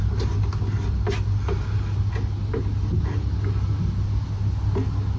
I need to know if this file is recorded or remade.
recorded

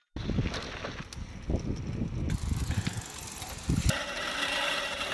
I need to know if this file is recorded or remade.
recorded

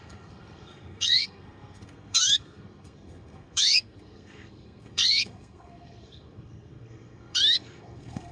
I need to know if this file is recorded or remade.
remade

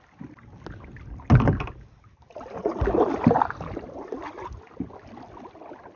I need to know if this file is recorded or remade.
recorded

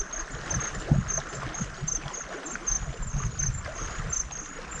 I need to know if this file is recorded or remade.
recorded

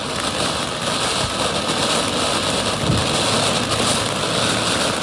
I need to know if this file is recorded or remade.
recorded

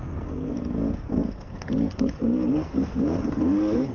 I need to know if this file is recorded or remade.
remade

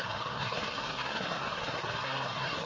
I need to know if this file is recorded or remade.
remade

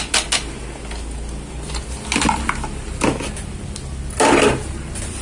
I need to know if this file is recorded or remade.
recorded